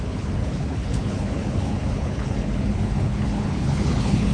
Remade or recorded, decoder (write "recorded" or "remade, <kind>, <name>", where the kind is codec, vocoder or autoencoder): remade, codec, HILCodec